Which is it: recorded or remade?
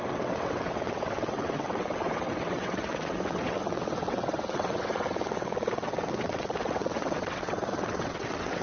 remade